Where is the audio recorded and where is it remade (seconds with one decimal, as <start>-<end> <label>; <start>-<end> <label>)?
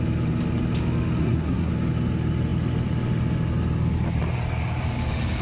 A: 0.0-1.2 recorded; 1.2-1.7 remade; 1.7-5.4 recorded